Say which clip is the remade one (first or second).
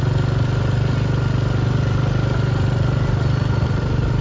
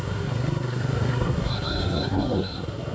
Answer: second